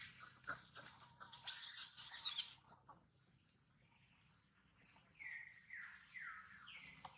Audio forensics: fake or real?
real